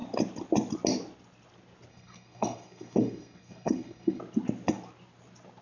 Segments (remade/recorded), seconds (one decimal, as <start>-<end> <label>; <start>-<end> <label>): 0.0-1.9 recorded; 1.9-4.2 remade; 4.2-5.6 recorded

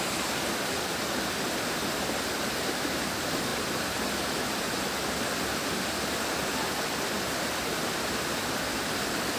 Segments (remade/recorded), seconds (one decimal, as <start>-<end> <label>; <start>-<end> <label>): 0.0-9.4 recorded

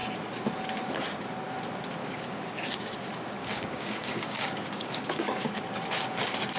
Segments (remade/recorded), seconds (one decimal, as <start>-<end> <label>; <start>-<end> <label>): 0.0-2.0 recorded; 2.0-2.7 remade; 2.7-3.4 recorded; 3.4-5.6 remade; 5.6-6.6 recorded

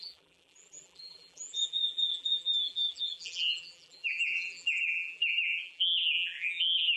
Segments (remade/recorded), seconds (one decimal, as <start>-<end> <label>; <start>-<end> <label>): 0.0-7.0 remade

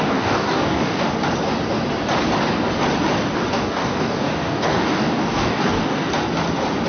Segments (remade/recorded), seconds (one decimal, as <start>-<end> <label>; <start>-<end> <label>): 0.0-1.1 remade; 1.1-3.5 recorded; 3.5-6.1 remade; 6.1-6.9 recorded

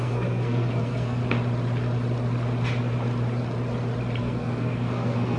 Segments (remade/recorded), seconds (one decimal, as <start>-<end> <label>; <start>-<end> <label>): 0.0-1.2 remade; 1.2-4.2 recorded; 4.2-5.4 remade